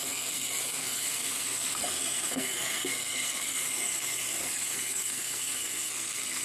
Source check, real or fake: fake